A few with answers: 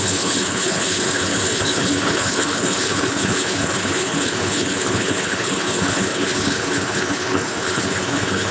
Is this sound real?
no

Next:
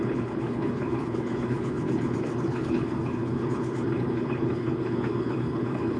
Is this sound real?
no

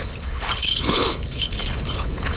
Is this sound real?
no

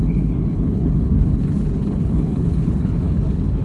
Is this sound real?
no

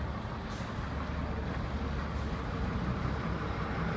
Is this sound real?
yes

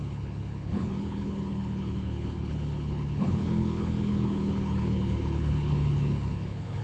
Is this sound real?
no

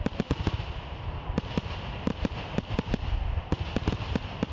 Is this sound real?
yes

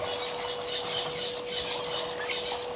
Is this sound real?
yes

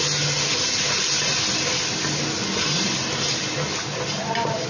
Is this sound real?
yes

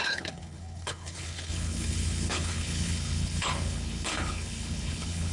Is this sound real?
no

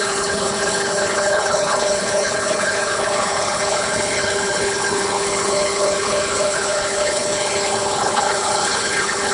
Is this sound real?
no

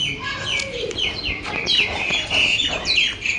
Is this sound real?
yes